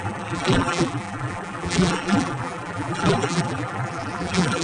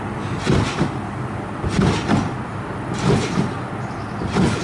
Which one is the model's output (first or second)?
first